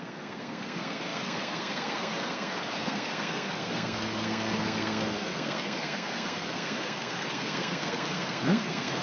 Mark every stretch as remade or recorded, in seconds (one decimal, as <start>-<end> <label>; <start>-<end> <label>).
0.0-9.0 remade

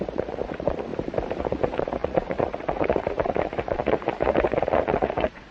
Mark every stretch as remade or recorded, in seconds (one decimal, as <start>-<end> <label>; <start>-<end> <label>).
0.0-0.9 remade; 0.9-1.4 recorded; 1.4-5.5 remade

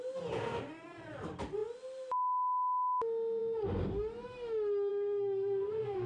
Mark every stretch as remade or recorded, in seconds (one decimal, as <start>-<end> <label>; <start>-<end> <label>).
0.0-4.9 recorded; 4.9-6.1 remade

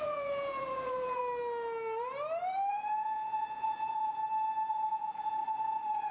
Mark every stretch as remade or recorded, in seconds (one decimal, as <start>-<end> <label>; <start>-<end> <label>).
0.0-1.2 remade; 1.2-2.7 recorded; 2.7-4.2 remade; 4.2-4.7 recorded; 4.7-5.4 remade; 5.4-6.1 recorded

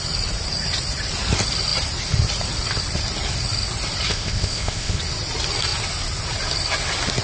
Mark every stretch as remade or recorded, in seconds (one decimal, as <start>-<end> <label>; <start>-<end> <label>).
0.0-4.1 recorded; 4.1-5.0 remade; 5.0-7.2 recorded

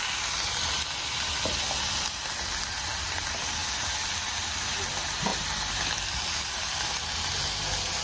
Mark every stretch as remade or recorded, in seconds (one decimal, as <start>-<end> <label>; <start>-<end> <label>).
0.0-5.3 recorded; 5.3-5.9 remade; 5.9-8.0 recorded

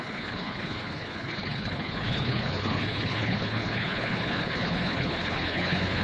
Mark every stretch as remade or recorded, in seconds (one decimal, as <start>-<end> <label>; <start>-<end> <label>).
0.0-6.0 remade

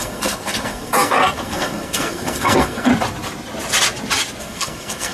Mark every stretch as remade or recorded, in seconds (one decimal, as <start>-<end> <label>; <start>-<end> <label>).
0.0-2.9 remade; 2.9-4.4 recorded; 4.4-5.1 remade